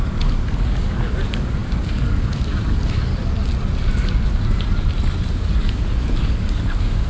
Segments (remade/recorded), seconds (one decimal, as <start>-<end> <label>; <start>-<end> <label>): 0.0-3.1 remade; 3.1-5.3 recorded; 5.3-7.1 remade